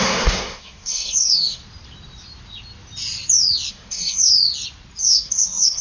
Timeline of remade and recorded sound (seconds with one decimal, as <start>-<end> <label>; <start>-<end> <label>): 0.0-1.6 remade; 1.6-3.7 recorded; 3.7-4.3 remade; 4.3-5.0 recorded; 5.0-5.8 remade